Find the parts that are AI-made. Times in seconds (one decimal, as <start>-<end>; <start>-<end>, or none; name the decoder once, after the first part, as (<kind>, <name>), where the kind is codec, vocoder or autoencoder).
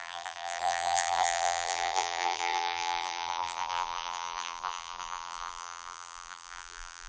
0.0-7.1 (vocoder, BigVGAN v2)